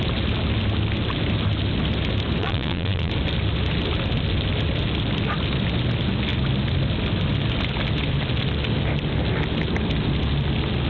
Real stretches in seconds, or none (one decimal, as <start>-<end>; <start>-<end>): 0.0-2.4; 3.1-10.9